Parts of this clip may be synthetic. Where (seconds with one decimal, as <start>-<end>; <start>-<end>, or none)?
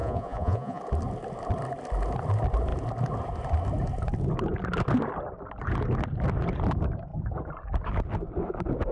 0.0-0.8